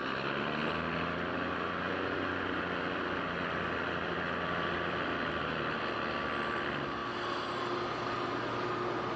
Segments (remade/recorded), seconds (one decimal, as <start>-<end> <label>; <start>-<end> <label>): 0.0-9.2 recorded